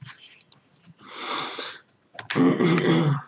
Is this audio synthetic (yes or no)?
no